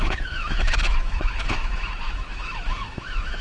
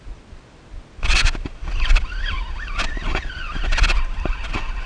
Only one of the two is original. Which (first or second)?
second